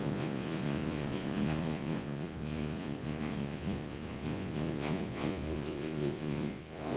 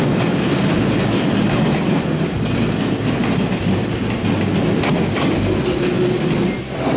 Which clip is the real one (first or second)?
second